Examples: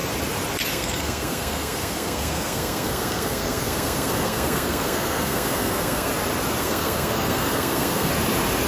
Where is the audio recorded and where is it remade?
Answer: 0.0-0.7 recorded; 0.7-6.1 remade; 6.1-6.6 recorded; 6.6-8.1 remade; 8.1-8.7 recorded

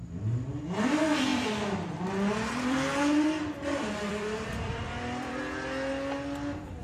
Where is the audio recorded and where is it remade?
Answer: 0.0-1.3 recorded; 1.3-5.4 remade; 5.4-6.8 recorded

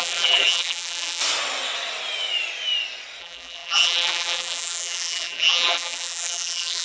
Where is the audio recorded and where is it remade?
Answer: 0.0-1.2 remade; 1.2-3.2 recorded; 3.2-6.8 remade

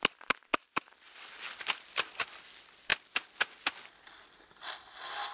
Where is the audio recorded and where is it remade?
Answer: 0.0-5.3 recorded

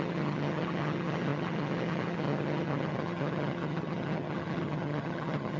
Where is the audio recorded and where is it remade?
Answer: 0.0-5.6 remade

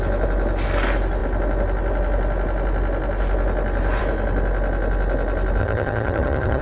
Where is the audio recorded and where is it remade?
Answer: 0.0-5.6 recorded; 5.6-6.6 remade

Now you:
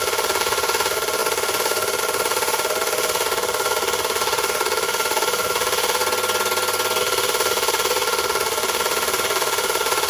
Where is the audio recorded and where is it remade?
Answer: 0.0-6.0 remade; 6.0-7.0 recorded; 7.0-10.1 remade